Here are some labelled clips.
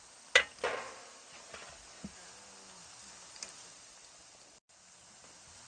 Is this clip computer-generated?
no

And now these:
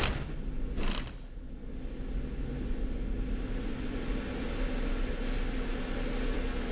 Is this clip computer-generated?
no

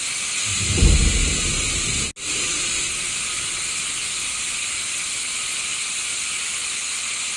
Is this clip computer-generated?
no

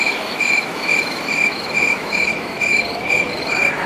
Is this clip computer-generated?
yes